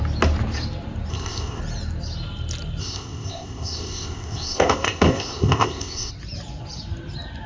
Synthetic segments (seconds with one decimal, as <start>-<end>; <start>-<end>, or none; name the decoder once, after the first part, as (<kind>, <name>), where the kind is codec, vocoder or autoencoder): 1.1-1.6 (codec, ZipCodec); 2.8-6.1

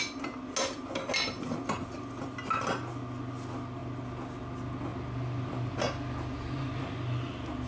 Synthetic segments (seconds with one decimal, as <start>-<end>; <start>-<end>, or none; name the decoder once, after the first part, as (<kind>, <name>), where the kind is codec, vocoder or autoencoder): none

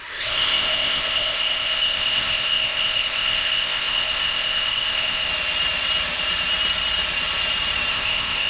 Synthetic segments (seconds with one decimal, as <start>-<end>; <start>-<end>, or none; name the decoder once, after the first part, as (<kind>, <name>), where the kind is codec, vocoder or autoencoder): 0.0-5.3 (codec, ZipCodec); 7.9-8.5

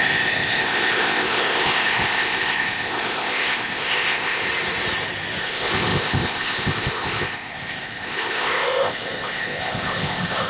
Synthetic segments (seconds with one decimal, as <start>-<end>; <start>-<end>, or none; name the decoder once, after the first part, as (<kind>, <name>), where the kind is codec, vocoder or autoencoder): 0.0-4.4 (codec, ZipCodec); 5.4-10.5

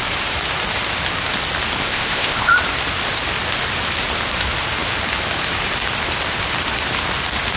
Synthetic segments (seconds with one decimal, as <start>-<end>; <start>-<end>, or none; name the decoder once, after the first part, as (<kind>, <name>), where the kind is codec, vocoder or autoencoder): 1.8-2.5 (codec, ZipCodec)

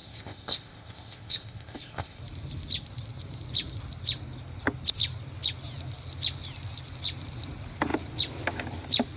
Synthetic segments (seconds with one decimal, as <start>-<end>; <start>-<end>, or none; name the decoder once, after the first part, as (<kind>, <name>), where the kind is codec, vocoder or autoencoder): 0.0-2.2 (codec, ZipCodec)